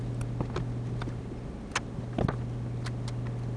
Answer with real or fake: real